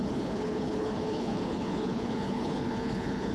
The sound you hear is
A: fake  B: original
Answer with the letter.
A